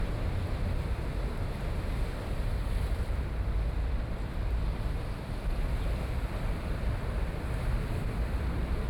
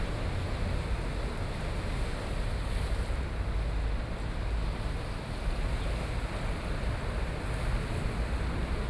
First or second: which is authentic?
second